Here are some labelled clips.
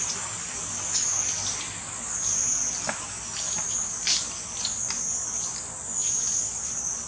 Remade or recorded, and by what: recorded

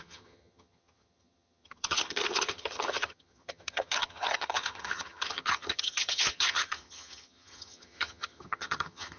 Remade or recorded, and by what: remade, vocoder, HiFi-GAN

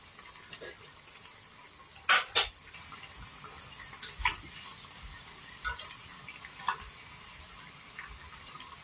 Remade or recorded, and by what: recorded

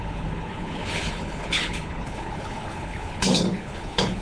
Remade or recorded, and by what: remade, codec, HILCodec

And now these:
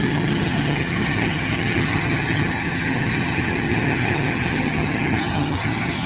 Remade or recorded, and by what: remade, vocoder, HiFi-GAN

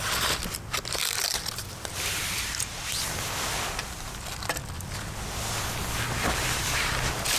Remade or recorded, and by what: recorded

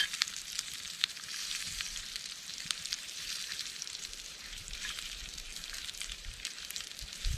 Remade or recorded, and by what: remade, vocoder, BigVGAN v2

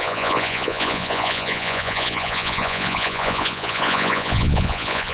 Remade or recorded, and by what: remade, vocoder, Vocos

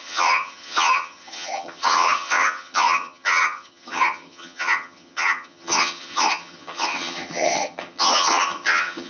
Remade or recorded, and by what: remade, vocoder, HiFi-GAN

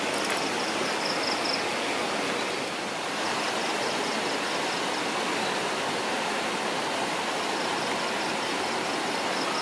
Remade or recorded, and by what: recorded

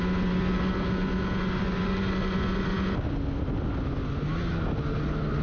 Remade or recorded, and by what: recorded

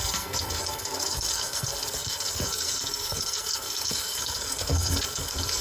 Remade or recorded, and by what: remade, codec, SNAC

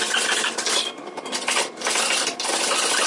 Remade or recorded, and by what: recorded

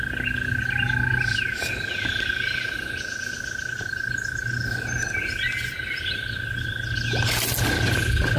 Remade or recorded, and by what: recorded